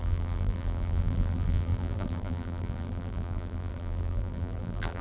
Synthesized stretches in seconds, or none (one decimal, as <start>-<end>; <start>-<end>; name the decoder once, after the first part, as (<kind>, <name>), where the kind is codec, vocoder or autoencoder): 0.0-5.0 (vocoder, BigVGAN v2)

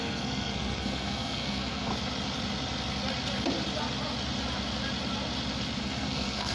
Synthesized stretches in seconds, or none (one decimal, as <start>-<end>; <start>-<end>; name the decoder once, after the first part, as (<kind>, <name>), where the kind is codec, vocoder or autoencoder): 0.0-1.9 (codec, SNAC); 5.8-6.5

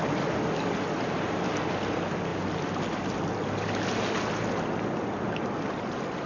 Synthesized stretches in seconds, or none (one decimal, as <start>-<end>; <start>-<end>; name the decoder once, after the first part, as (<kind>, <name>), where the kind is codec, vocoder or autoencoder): none

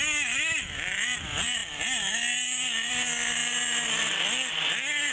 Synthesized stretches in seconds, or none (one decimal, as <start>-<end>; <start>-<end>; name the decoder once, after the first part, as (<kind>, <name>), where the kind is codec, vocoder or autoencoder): none

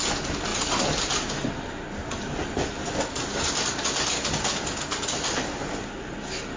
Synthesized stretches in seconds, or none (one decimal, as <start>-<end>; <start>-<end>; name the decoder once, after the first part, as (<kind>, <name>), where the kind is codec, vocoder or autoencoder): none

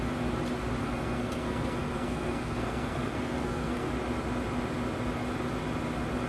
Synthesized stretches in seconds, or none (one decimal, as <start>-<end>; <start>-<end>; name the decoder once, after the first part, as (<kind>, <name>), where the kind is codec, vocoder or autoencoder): 0.8-3.9 (codec, SNAC)

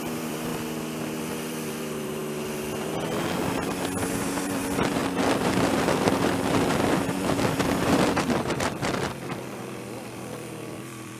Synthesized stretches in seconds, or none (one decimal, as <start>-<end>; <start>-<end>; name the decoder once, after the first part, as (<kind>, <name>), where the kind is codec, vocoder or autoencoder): 0.0-0.5 (vocoder, BigVGAN v2); 1.2-2.2; 3.8-11.2

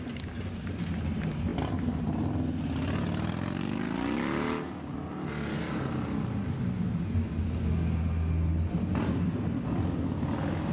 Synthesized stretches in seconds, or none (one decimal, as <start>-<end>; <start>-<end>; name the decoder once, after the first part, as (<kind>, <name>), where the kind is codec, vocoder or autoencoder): none